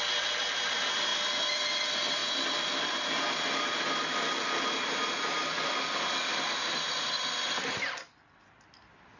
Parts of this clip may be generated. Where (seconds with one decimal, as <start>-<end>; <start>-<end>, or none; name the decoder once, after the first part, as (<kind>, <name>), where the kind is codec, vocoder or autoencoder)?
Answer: none